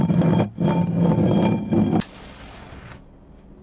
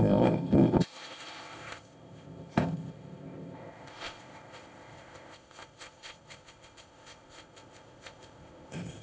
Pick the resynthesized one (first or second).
second